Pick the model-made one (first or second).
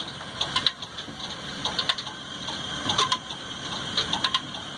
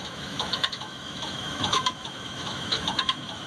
second